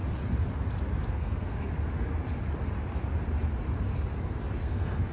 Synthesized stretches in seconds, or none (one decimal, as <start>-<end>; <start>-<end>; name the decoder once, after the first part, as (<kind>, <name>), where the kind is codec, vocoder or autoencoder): 1.1-1.7 (codec, SNAC); 4.6-5.1